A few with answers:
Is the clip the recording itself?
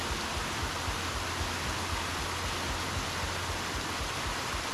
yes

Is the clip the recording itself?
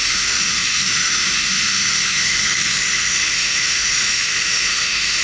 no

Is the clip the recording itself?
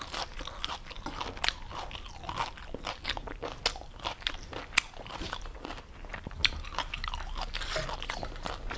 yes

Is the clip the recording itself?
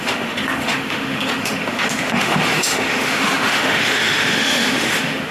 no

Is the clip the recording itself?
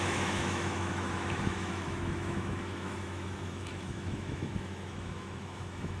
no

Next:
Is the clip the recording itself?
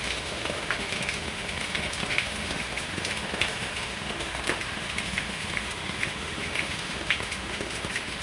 no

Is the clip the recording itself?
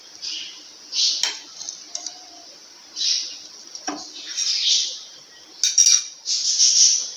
yes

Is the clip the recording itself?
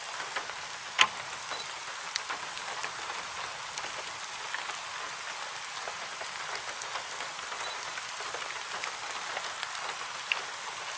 yes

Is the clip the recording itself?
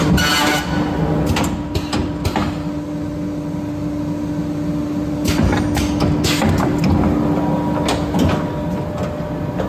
yes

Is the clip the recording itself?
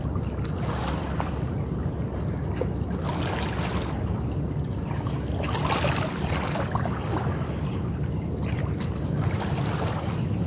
yes